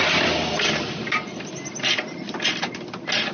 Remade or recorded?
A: recorded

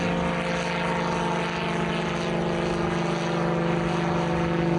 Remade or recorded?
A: recorded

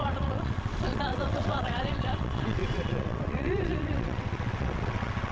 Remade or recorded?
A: remade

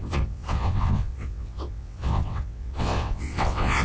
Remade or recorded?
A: remade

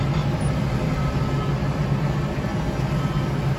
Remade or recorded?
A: recorded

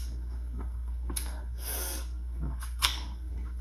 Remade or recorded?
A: remade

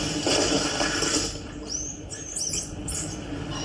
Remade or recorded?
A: remade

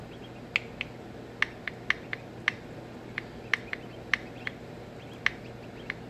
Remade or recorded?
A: recorded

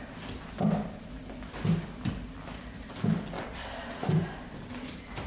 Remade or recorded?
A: remade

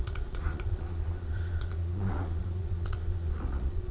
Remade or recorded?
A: remade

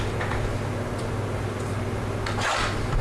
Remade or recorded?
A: recorded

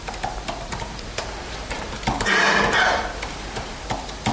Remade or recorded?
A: remade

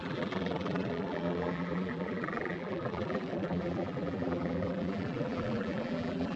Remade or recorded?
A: remade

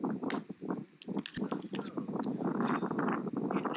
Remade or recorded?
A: recorded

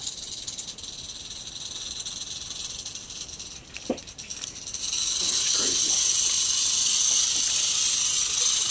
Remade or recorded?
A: remade